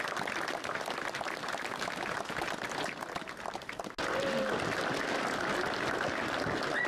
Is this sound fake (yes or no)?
no